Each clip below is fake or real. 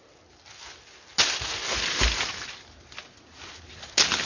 real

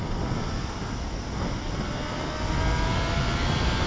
real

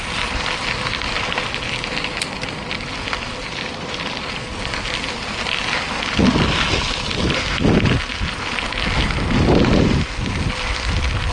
real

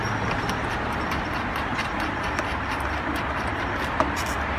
real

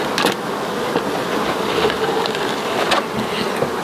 real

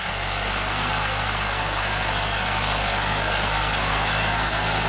fake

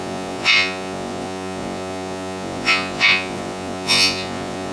fake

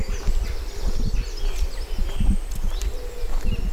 real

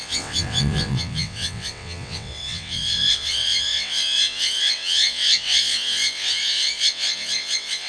fake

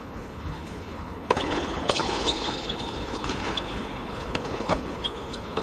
fake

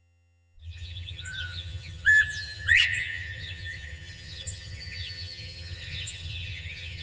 fake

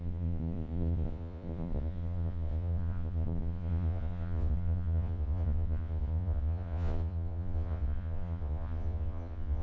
fake